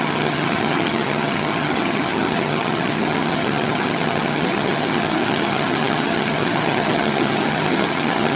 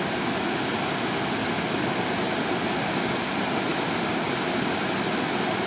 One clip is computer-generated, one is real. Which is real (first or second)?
second